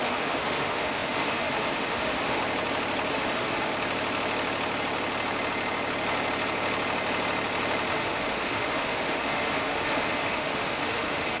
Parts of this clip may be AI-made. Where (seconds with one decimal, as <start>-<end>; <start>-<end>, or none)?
0.0-2.4; 3.1-3.7; 7.9-11.4